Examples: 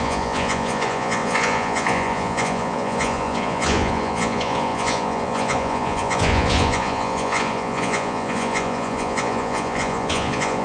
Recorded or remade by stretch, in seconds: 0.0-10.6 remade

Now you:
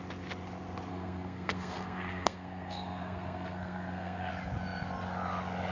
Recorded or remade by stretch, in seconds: 0.0-0.9 recorded; 0.9-4.3 remade; 4.3-5.7 recorded

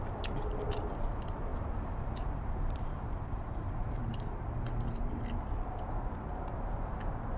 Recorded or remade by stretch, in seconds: 0.0-1.5 recorded; 1.5-5.0 remade; 5.0-7.4 recorded

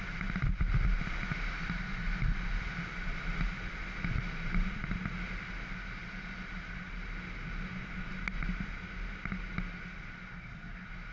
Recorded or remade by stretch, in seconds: 0.0-11.1 recorded

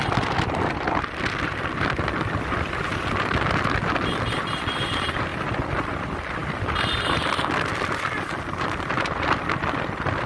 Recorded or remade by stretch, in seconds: 0.0-10.3 remade